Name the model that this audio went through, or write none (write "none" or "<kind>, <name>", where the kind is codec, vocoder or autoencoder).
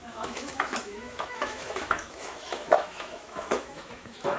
autoencoder, DAC-VAE